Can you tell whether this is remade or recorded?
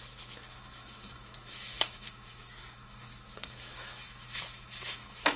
remade